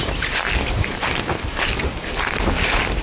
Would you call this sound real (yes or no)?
yes